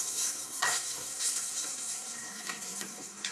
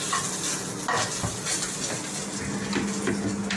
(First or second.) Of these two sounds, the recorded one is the second